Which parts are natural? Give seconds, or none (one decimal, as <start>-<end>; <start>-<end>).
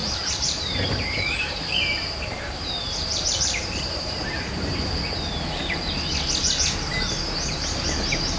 5.0-8.4